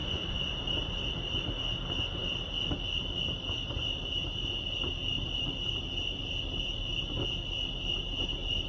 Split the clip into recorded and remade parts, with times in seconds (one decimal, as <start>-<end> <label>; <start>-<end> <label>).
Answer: 0.0-0.5 remade; 0.5-8.7 recorded